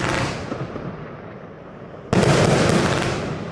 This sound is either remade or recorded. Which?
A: recorded